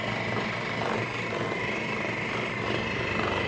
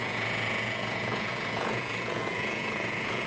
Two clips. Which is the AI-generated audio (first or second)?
second